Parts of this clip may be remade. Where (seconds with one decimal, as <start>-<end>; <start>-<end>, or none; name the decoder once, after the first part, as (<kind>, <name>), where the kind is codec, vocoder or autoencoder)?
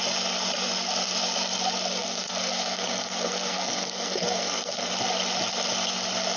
2.0-4.9 (codec, SNAC)